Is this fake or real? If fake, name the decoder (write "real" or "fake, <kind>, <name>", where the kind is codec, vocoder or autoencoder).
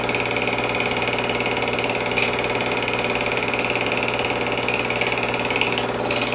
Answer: real